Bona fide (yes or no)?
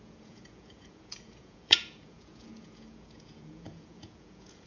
no